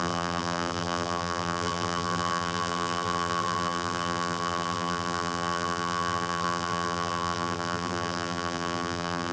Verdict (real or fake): fake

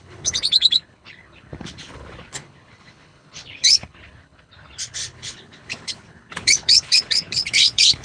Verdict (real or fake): fake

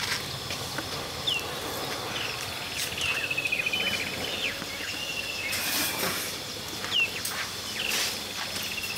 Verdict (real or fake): real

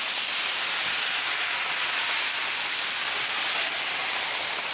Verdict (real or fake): real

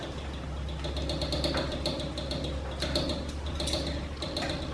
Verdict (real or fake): real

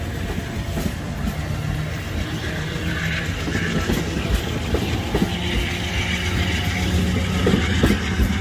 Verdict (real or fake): real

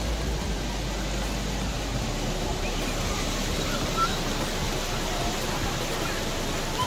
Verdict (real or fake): real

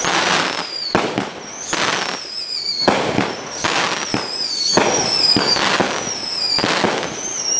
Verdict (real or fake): real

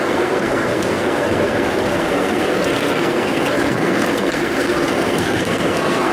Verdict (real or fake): fake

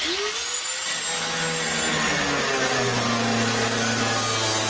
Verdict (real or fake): real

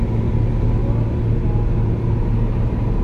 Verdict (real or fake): real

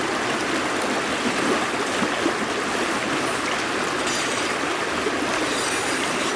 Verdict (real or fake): real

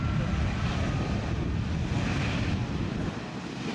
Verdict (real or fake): real